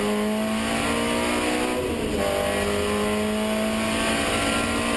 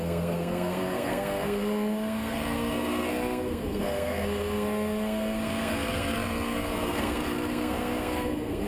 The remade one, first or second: second